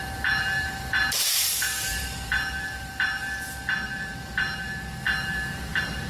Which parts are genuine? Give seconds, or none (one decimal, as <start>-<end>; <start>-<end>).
none